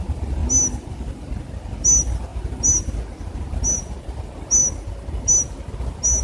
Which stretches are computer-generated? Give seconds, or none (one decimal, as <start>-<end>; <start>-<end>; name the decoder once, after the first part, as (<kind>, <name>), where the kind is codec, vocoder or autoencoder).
none